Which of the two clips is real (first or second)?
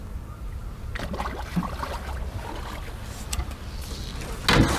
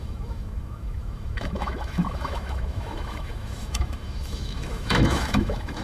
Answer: first